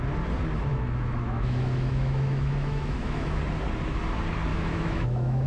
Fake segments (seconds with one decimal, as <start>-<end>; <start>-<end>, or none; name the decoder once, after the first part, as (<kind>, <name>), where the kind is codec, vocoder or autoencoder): 0.7-3.4 (autoencoder, DAC-VAE); 4.5-5.5